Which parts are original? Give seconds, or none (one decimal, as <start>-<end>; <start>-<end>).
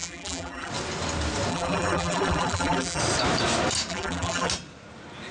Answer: 0.7-1.5; 3.0-3.9; 4.5-5.3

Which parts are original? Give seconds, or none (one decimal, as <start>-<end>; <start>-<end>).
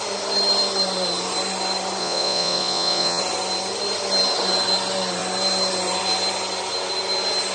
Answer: 0.0-2.0; 3.2-7.5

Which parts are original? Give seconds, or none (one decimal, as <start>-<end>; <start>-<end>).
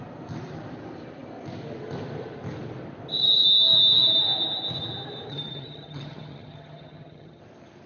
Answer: 0.0-5.3; 7.4-7.9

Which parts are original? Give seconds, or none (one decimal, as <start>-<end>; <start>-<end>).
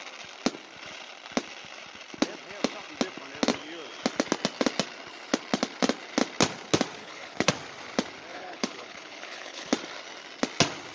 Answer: 0.0-7.0; 7.5-8.3; 9.7-10.9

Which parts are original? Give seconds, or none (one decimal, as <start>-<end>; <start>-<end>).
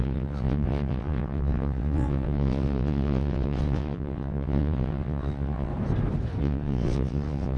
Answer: 5.7-6.4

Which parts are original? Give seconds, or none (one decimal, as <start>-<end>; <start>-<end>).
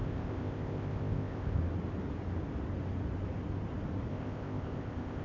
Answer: 1.6-4.1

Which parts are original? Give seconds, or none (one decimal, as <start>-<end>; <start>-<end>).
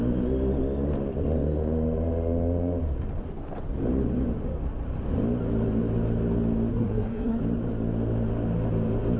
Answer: 0.0-6.7; 7.4-9.2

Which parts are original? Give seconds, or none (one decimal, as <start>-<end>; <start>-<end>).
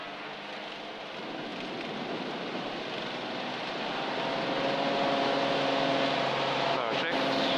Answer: 0.0-7.6